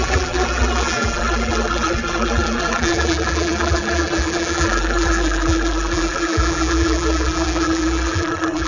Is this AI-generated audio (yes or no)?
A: yes